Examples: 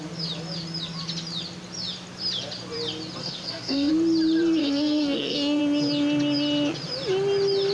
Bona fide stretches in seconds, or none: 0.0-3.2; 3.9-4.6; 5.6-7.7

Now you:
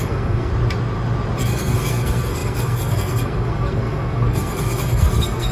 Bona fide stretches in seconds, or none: 0.5-1.4

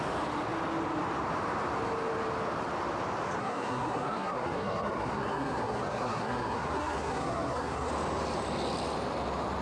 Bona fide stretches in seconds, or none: 0.0-3.4; 7.9-9.6

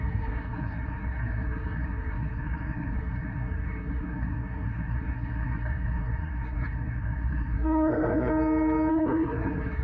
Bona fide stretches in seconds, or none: 8.3-8.9

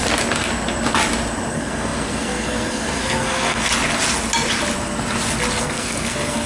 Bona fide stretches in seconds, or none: 0.0-1.5; 3.7-5.6

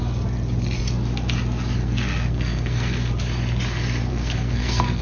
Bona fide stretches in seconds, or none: 0.0-1.8; 3.1-4.1

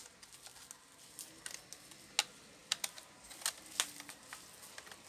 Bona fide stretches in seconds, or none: 0.0-5.1